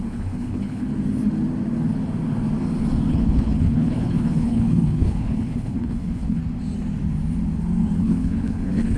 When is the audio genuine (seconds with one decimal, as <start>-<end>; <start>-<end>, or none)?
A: 0.9-3.1; 6.4-8.0

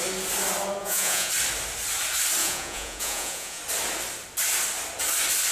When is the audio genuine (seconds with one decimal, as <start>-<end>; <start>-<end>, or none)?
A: 0.0-0.8; 1.3-2.4; 3.6-5.5